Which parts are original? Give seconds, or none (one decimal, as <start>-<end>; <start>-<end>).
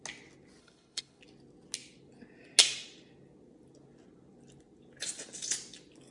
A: 0.0-0.6; 1.2-6.1